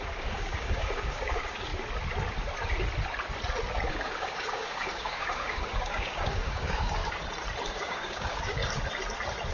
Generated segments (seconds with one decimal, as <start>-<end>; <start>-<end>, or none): 0.0-1.7; 3.9-7.0; 7.7-8.6